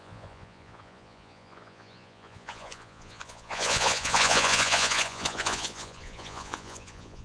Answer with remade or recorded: remade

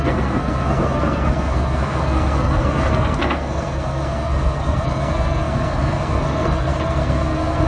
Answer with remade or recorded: remade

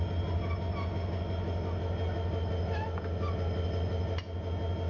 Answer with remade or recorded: recorded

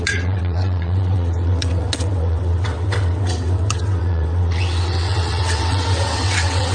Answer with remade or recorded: remade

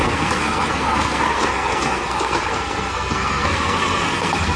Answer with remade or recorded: remade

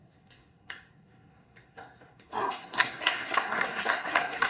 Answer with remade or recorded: remade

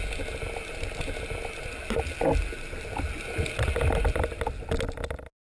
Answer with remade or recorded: recorded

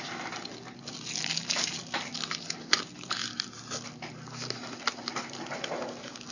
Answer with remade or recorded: recorded